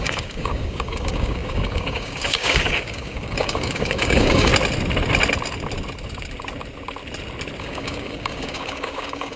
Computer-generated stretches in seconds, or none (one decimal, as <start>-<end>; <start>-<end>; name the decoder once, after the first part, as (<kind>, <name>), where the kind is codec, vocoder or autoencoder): 0.0-4.5 (codec, DAC); 7.6-9.4